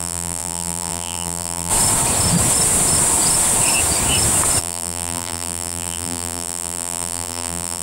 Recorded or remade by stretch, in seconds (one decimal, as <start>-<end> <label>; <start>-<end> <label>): 0.0-1.7 remade; 1.7-4.6 recorded; 4.6-7.8 remade